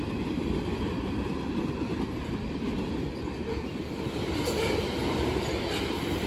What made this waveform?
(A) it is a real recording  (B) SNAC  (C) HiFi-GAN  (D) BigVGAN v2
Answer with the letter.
D